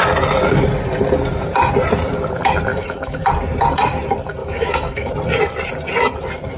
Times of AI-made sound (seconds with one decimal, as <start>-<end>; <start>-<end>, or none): 2.7-3.3; 4.4-5.1